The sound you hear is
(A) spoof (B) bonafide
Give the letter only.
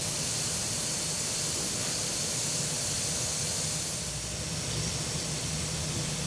B